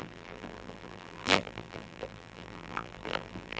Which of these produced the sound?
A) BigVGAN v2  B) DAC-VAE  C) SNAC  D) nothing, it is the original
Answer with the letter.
A